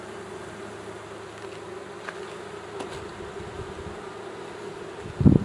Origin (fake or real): real